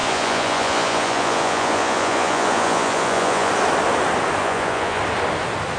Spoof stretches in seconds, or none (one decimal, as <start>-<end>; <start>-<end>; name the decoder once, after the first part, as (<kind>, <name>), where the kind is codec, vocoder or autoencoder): 0.0-3.5 (vocoder, Vocos); 4.4-5.0